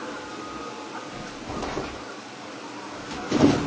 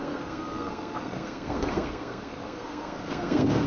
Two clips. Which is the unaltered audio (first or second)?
first